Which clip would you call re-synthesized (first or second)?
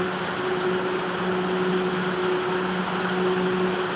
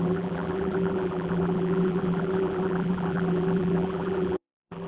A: second